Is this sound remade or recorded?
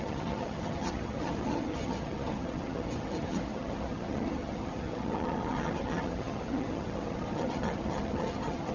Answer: remade